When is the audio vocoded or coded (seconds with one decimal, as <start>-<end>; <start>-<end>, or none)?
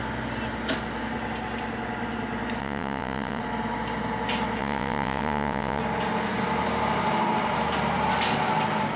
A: 2.6-3.4; 4.6-5.8